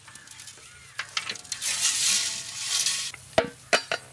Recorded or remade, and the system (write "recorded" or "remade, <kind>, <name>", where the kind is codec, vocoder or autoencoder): recorded